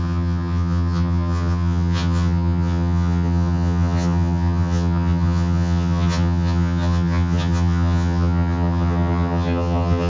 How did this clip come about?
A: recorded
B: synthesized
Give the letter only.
B